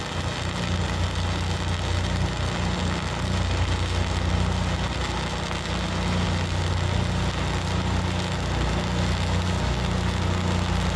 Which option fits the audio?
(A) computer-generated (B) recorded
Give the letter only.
B